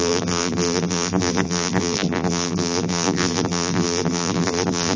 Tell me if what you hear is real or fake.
fake